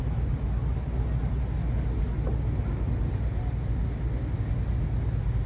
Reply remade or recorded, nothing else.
recorded